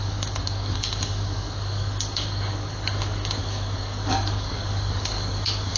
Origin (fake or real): fake